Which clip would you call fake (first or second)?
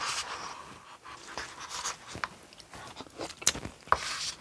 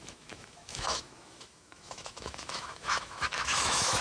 second